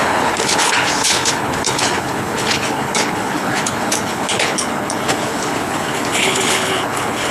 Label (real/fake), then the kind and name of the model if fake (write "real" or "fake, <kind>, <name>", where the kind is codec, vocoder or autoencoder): fake, codec, HILCodec